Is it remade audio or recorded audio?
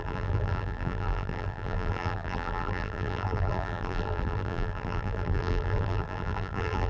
remade